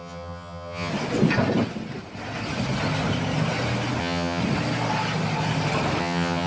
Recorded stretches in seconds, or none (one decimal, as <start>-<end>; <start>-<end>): 0.9-4.0; 4.4-6.0